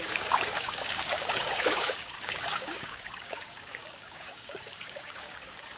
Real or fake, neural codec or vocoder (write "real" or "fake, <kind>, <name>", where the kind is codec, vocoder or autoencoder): fake, codec, DAC